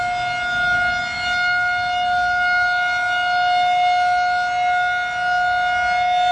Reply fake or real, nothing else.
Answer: real